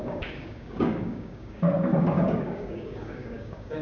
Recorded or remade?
remade